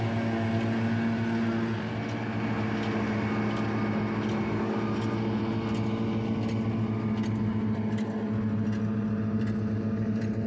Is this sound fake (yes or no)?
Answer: no